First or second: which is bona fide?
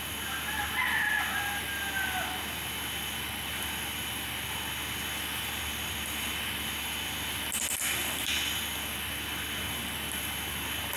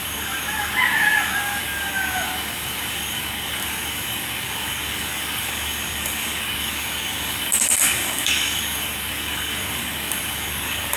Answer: first